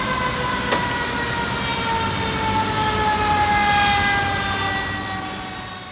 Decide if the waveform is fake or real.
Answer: real